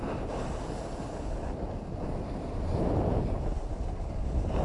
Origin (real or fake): real